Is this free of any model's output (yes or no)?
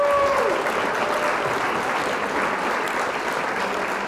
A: yes